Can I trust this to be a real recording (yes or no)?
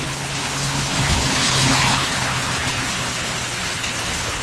no